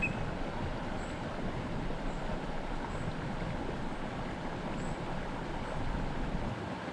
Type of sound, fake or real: real